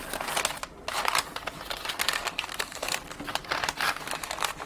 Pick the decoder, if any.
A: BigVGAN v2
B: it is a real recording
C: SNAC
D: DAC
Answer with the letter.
B